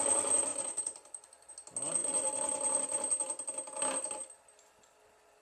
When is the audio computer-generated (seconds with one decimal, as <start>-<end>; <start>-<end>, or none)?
0.5-1.5